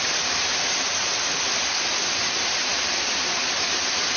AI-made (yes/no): no